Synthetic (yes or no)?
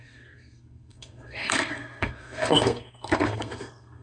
yes